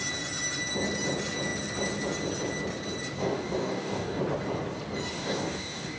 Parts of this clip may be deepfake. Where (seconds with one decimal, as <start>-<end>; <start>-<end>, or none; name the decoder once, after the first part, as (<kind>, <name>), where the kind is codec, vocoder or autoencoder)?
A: 3.2-4.2 (codec, DAC); 5.1-6.0